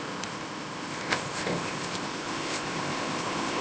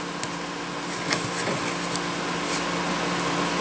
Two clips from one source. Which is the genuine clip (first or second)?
second